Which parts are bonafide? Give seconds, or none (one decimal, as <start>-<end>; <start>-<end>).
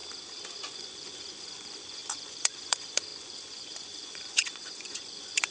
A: 0.0-0.7